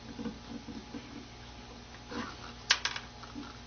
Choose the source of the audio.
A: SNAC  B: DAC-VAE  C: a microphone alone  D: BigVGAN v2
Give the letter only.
C